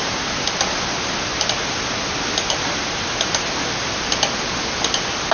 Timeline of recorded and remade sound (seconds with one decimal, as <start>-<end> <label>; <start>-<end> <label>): 0.0-5.3 recorded